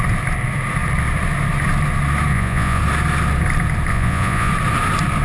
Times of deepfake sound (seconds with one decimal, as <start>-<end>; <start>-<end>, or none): 2.3-2.8; 3.9-4.5